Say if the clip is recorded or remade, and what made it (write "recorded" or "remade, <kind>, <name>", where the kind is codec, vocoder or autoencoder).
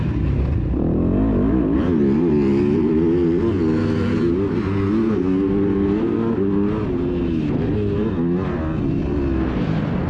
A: recorded